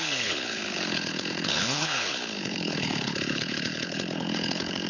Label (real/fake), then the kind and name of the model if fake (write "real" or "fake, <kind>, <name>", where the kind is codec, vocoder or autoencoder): fake, codec, HILCodec